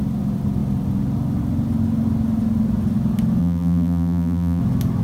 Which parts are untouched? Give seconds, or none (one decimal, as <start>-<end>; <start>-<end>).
0.0-3.4; 4.6-5.0